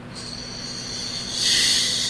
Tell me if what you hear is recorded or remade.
recorded